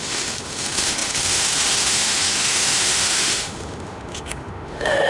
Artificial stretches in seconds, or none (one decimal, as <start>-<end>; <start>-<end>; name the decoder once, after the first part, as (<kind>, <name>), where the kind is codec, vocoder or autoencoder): 0.0-5.1 (autoencoder, DAC-VAE)